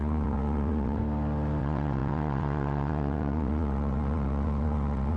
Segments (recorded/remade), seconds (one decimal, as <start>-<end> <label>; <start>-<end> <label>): 0.0-1.0 remade; 1.0-1.6 recorded; 1.6-5.2 remade